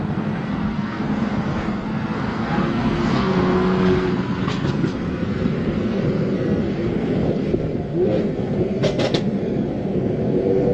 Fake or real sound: fake